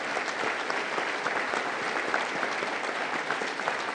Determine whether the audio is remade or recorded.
recorded